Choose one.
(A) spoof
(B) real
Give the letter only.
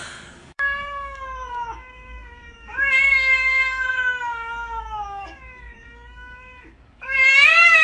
A